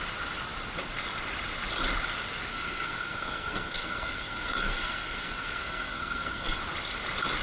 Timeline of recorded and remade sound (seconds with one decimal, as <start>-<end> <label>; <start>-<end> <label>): 0.0-2.5 recorded; 2.5-6.6 remade; 6.6-7.4 recorded